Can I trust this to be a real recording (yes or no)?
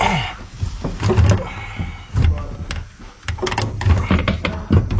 yes